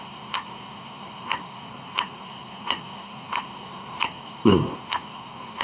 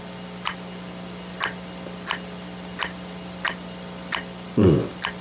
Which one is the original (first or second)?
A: second